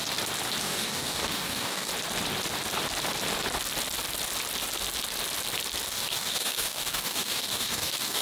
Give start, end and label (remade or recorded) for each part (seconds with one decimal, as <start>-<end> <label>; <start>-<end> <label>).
0.0-0.6 recorded; 0.6-1.9 remade; 1.9-5.9 recorded; 5.9-8.2 remade

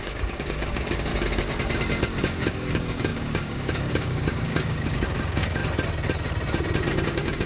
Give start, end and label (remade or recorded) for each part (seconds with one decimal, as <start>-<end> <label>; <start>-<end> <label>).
0.0-1.1 remade; 1.1-2.2 recorded; 2.2-5.6 remade; 5.6-7.1 recorded; 7.1-7.5 remade